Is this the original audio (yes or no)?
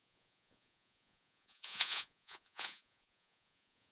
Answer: no